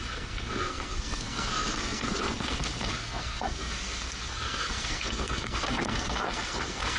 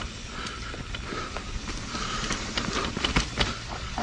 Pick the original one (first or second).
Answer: second